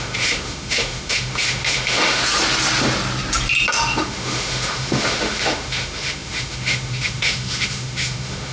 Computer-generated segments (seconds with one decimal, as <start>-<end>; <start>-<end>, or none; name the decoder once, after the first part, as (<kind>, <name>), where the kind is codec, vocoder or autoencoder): 0.0-2.2 (autoencoder, DAC-VAE); 3.7-8.5